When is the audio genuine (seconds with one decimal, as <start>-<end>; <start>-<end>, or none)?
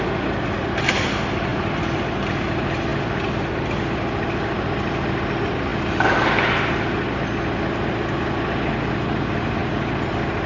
0.0-1.5; 2.0-10.5